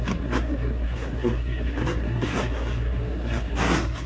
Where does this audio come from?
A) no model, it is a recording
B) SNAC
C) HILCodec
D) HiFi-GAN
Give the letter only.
B